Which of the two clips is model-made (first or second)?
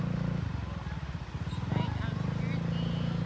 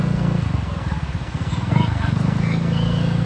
second